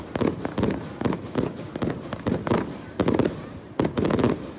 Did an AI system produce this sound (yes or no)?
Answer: no